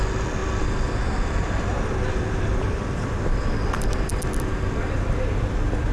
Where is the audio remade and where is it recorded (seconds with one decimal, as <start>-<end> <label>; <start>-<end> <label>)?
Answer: 0.0-0.4 recorded; 0.4-3.9 remade; 3.9-5.9 recorded